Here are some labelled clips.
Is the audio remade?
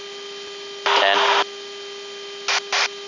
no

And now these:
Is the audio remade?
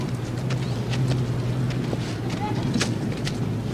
no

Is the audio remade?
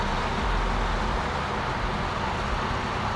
no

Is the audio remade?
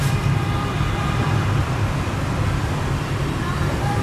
yes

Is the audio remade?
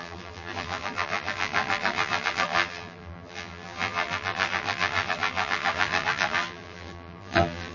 yes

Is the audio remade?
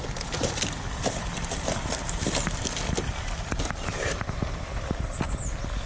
yes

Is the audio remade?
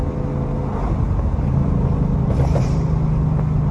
no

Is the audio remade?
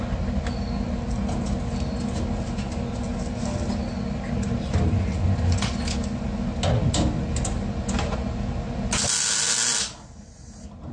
no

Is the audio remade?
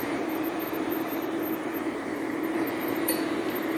yes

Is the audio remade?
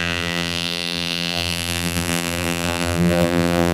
yes